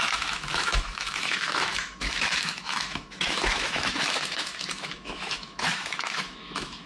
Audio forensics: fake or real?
fake